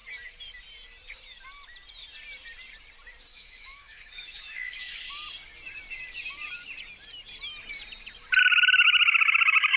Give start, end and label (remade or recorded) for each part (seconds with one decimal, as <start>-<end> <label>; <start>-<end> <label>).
0.0-3.3 recorded; 3.3-5.1 remade; 5.1-9.8 recorded